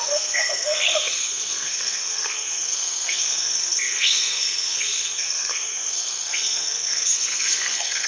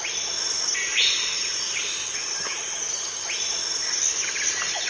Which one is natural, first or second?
second